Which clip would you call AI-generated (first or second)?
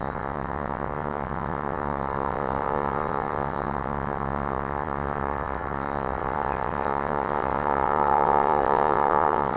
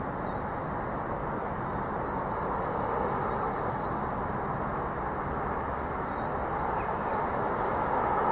first